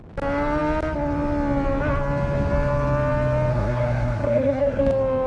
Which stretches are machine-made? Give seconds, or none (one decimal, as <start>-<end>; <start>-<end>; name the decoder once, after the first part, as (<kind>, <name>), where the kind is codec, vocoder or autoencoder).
3.5-4.8 (codec, SNAC)